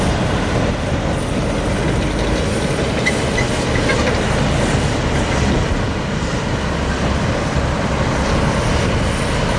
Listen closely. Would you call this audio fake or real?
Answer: real